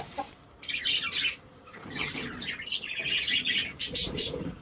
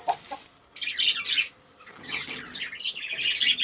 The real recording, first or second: second